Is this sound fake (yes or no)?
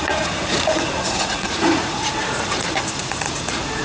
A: yes